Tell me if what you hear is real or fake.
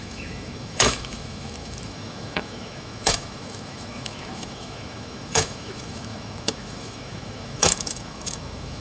fake